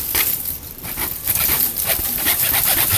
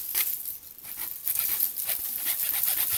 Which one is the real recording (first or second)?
second